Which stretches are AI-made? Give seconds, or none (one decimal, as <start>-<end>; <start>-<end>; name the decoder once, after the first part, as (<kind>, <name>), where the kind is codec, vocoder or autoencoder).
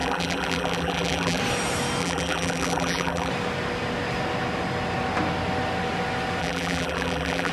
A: 0.0-1.4 (vocoder, BigVGAN v2); 2.0-3.3; 6.4-7.5